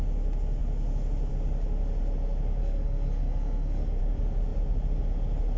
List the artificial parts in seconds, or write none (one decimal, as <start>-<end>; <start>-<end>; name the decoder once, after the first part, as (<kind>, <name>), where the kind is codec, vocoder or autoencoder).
2.6-4.0 (codec, SNAC)